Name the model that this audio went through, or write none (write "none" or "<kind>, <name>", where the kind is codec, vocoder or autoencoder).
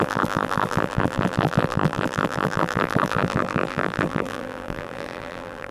vocoder, BigVGAN v2